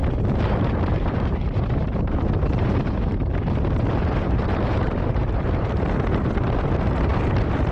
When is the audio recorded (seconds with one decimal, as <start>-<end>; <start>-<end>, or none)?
0.0-0.6